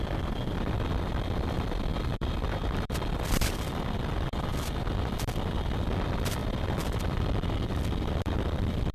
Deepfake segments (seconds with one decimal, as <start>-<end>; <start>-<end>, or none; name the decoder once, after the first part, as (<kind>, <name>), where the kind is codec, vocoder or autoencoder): 0.0-8.9 (vocoder, BigVGAN v2)